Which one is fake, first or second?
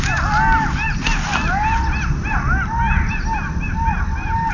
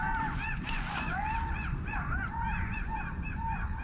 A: second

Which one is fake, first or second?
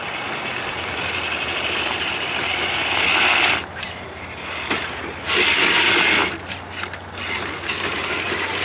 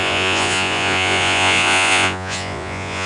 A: second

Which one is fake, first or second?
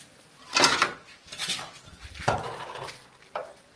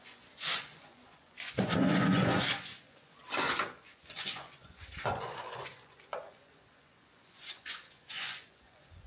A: second